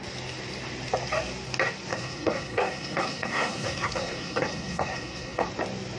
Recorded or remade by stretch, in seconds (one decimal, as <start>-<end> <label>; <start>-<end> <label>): 0.0-1.9 recorded; 1.9-5.5 remade; 5.5-6.0 recorded